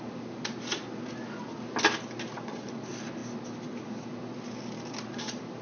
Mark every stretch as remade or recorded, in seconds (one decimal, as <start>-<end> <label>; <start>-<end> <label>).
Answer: 0.0-5.6 recorded